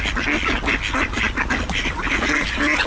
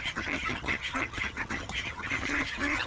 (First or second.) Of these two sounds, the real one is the first